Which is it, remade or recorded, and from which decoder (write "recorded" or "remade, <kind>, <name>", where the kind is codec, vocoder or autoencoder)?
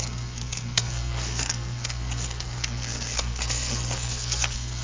remade, codec, SNAC